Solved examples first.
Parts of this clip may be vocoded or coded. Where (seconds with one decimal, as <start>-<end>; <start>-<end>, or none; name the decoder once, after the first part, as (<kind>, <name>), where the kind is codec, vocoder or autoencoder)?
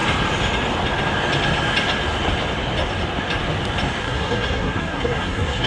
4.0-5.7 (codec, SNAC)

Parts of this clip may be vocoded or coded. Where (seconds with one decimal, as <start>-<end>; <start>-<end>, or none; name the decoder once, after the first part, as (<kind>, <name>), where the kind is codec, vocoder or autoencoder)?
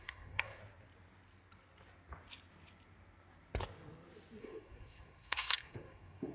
0.0-0.6 (codec, SNAC); 4.4-6.3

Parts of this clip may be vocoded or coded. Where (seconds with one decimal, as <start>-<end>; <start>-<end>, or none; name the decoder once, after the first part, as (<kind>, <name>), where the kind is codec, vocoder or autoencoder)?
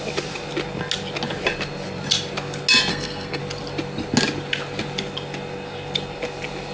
2.9-3.4 (codec, SNAC)